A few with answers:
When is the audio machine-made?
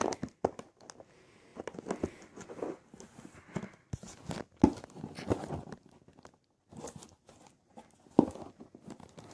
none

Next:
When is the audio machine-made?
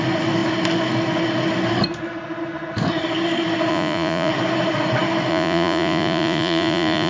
3.7-4.3 (vocoder, Vocos); 5.3-7.1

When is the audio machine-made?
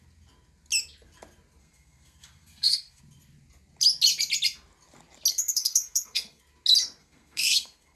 1.6-3.0 (codec, SNAC); 5.3-6.4; 7.0-8.0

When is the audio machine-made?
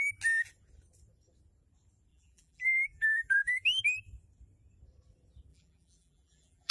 2.1-3.8 (vocoder, BigVGAN v2); 5.5-6.7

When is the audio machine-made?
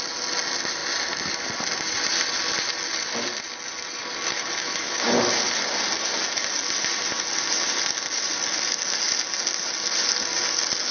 4.6-5.1 (autoencoder, DAC-VAE)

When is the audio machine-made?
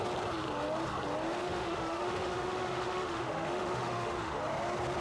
1.4-4.4 (autoencoder, DAC-VAE)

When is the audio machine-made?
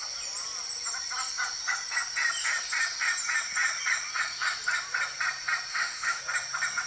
5.7-6.2 (autoencoder, DAC-VAE)